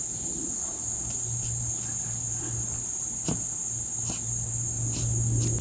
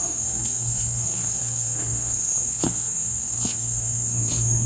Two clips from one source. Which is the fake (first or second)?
second